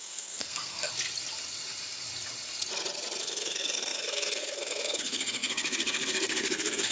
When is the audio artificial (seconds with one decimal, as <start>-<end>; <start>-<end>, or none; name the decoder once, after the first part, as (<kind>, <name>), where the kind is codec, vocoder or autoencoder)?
0.0-0.9 (codec, SNAC); 3.2-6.9